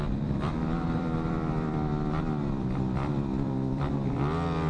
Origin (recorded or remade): remade